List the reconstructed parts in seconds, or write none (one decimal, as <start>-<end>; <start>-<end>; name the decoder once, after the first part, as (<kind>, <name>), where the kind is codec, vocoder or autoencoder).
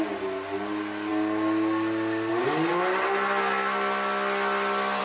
none